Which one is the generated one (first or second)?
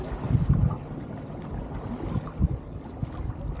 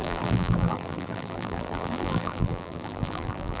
second